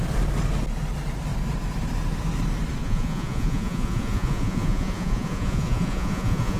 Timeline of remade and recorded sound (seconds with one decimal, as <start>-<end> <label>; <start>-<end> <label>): 0.0-2.8 recorded; 2.8-6.6 remade